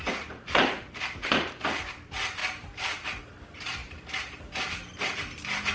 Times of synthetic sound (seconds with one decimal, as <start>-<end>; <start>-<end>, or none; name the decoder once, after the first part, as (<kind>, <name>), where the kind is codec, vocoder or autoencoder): 0.0-1.6 (vocoder, BigVGAN v2); 2.4-3.2; 3.8-4.4